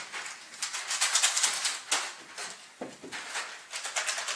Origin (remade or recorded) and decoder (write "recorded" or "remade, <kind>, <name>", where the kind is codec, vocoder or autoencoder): recorded